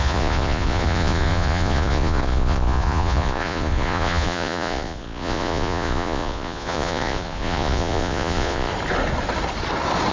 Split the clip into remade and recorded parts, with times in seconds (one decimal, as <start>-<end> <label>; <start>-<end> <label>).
0.0-8.7 remade; 8.7-10.1 recorded